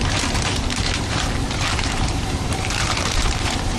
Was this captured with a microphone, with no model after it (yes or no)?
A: no